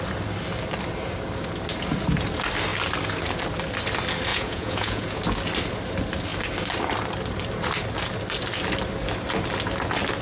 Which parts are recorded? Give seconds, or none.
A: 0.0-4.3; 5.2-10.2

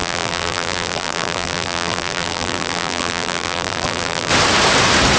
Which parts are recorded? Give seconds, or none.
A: 4.3-5.2

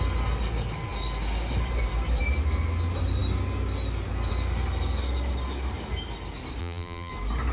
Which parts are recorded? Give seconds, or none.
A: 0.0-6.6; 7.1-7.5

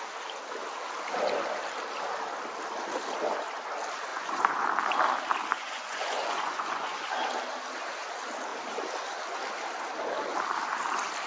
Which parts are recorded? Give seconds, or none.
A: 0.0-4.1; 4.7-5.5; 7.3-11.3